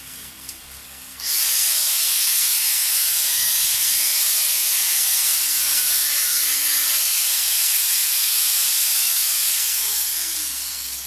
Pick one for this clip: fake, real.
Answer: fake